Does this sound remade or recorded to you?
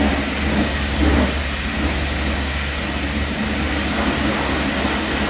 recorded